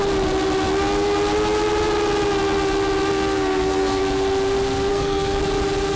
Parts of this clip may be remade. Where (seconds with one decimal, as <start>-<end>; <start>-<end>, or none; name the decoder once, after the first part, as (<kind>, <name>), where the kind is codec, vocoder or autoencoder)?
3.1-4.0 (codec, SNAC); 4.9-5.4